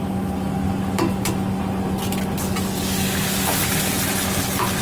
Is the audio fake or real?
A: real